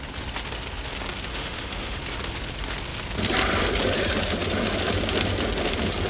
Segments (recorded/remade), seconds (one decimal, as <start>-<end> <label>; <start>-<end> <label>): 0.0-1.3 recorded; 1.3-2.0 remade; 2.0-6.1 recorded